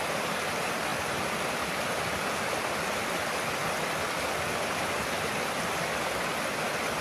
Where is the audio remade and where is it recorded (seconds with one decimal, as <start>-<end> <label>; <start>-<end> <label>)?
0.0-7.0 recorded